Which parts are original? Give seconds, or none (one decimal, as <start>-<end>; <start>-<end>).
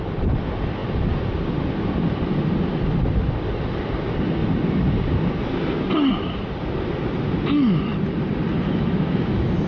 0.0-8.7